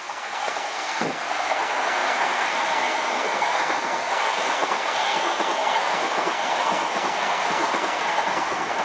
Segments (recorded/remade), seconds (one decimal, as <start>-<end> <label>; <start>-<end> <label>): 0.0-8.8 remade